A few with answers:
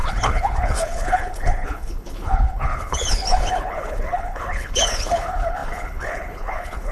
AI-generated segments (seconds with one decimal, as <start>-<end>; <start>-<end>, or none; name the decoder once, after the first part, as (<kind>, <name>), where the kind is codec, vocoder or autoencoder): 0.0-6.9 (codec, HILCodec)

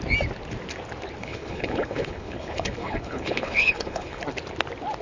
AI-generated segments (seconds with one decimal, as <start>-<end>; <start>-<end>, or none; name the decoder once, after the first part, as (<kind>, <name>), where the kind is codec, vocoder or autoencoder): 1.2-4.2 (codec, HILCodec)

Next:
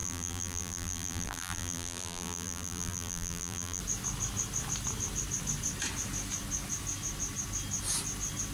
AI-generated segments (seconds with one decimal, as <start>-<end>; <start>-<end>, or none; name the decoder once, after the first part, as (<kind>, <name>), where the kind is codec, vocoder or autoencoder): 0.0-3.8 (vocoder, BigVGAN v2)